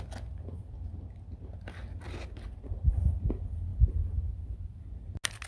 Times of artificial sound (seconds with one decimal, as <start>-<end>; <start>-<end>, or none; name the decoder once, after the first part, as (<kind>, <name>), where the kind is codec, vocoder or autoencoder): 3.7-5.1 (vocoder, BigVGAN v2)